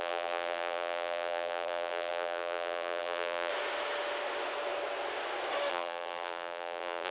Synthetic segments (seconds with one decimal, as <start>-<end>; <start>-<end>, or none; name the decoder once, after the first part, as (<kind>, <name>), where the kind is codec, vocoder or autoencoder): 0.0-3.5 (vocoder, BigVGAN v2); 5.7-7.1